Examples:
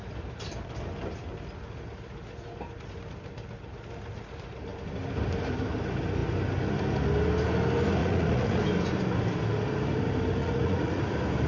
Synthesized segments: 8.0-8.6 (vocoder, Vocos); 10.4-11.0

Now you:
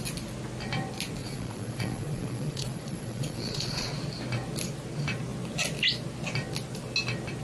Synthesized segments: 1.2-3.9 (vocoder, Vocos)

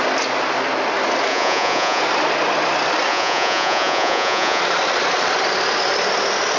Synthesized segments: 1.3-2.0 (vocoder, Vocos); 3.1-4.6

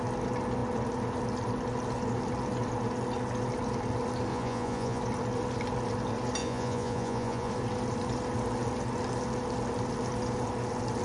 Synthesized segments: 4.3-5.0 (vocoder, Vocos); 6.4-7.5

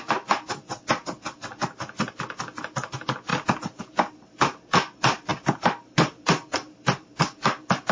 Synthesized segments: none

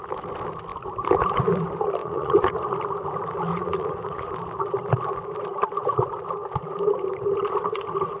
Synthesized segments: 2.0-2.5 (vocoder, Vocos); 3.5-4.3

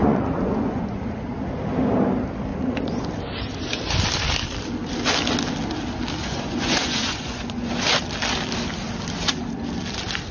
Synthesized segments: 0.0-1.0 (vocoder, Vocos); 2.5-3.1; 6.2-7.7

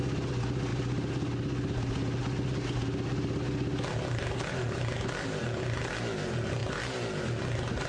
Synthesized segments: none